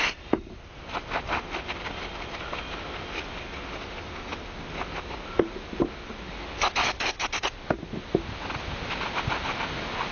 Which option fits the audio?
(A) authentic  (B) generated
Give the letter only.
A